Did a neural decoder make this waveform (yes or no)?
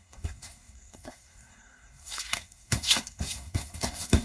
yes